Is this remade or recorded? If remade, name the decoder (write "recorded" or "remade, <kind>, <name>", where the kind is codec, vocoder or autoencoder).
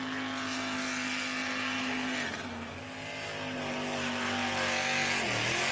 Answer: recorded